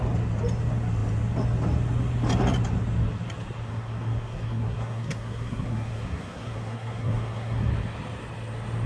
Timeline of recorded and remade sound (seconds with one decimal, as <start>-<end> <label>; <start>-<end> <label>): 0.0-3.7 recorded; 3.7-7.7 remade; 7.7-8.9 recorded